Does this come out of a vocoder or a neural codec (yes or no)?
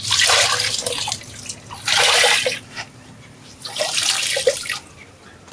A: no